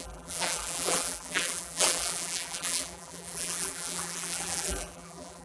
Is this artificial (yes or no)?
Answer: yes